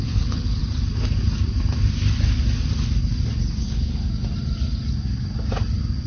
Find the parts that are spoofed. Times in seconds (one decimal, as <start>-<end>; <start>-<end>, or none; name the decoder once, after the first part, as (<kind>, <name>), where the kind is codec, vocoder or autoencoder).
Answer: 0.0-0.6 (codec, HILCodec); 3.6-4.0